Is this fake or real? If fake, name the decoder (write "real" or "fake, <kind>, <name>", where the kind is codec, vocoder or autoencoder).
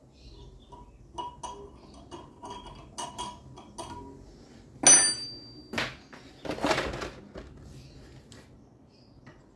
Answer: real